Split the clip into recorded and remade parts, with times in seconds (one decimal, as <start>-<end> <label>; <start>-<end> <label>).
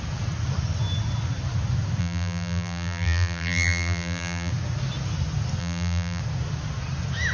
0.0-2.0 recorded; 2.0-4.5 remade; 4.5-5.6 recorded; 5.6-6.2 remade; 6.2-7.3 recorded